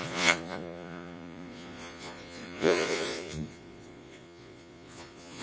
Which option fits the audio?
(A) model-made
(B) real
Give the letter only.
A